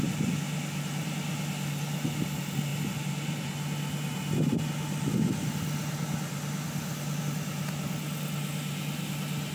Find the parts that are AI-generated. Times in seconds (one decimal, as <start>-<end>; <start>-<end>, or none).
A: none